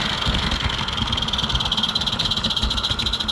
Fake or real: real